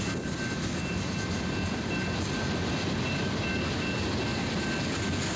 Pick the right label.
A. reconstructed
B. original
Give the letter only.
B